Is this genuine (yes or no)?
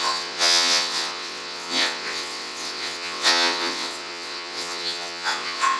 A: no